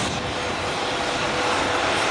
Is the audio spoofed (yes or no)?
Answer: no